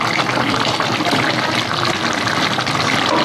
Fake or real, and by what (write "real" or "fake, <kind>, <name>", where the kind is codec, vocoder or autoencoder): real